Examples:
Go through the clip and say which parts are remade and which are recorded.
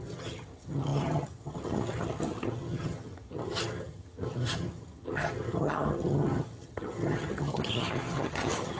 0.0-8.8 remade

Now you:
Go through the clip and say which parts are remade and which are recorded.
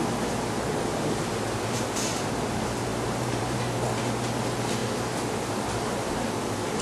0.0-2.9 recorded; 2.9-3.6 remade; 3.6-6.8 recorded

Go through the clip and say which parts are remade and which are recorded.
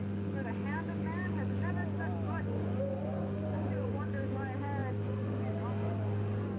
0.0-6.6 recorded